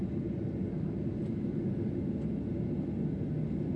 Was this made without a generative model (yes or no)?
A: yes